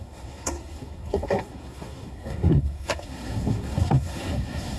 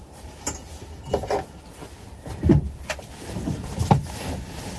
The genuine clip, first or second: second